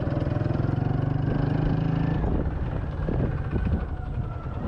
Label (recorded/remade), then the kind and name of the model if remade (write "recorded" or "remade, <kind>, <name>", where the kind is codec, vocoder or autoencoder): recorded